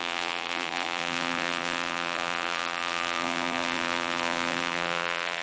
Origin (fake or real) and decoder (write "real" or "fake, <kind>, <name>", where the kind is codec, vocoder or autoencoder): fake, vocoder, BigVGAN v2